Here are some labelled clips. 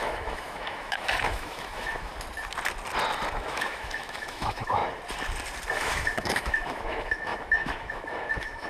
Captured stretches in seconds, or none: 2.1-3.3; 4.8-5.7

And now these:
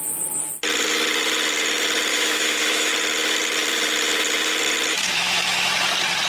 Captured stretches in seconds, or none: 0.0-2.1; 2.9-4.9; 5.7-6.3